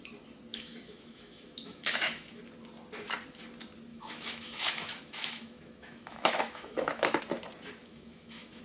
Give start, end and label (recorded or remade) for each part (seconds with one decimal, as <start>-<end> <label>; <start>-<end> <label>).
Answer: 0.0-0.5 recorded; 0.5-2.4 remade; 2.4-3.9 recorded; 3.9-7.2 remade; 7.2-7.8 recorded; 7.8-8.6 remade